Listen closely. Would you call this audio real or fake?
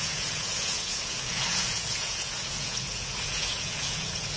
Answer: fake